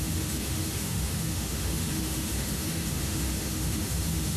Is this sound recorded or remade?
remade